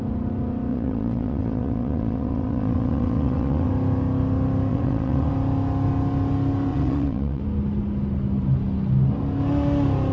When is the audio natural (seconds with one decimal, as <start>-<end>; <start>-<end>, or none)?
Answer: 0.0-0.7; 3.7-4.7; 5.3-6.7; 7.4-10.1